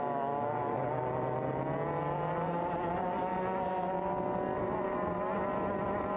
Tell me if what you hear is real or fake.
real